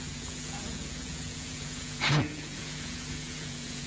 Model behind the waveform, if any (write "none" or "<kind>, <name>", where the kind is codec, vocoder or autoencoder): vocoder, Vocos